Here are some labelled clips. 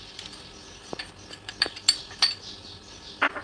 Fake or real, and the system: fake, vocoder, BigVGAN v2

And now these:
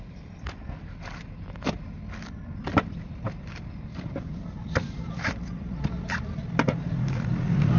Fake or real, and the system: fake, vocoder, BigVGAN v2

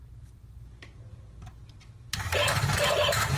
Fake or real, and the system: fake, vocoder, BigVGAN v2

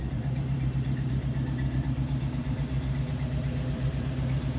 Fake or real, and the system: fake, vocoder, BigVGAN v2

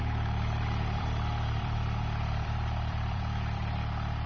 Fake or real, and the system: fake, vocoder, BigVGAN v2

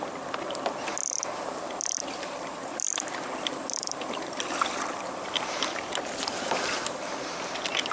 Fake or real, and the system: real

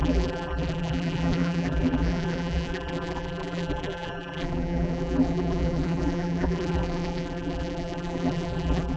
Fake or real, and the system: fake, vocoder, BigVGAN v2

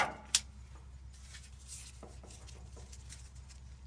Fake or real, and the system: real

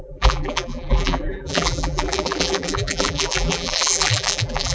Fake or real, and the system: fake, vocoder, BigVGAN v2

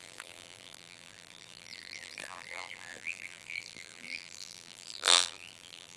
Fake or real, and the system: fake, vocoder, BigVGAN v2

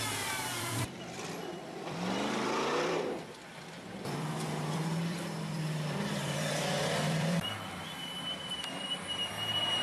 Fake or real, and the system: fake, vocoder, BigVGAN v2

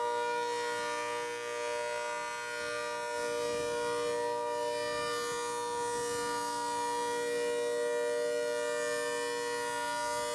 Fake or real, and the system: real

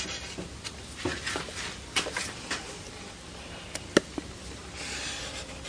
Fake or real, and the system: real